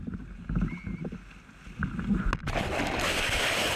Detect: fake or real real